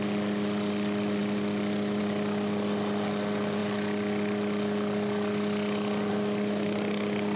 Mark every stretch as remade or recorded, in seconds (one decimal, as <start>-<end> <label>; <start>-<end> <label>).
0.0-7.4 recorded